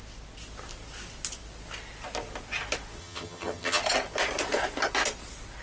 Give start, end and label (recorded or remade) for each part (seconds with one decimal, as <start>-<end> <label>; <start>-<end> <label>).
0.0-3.0 recorded; 3.0-3.8 remade; 3.8-5.6 recorded